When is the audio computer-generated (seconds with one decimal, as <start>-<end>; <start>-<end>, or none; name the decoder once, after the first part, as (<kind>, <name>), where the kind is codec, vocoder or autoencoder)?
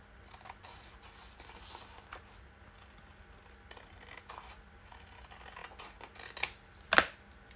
none